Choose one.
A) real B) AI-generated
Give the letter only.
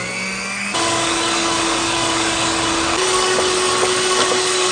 B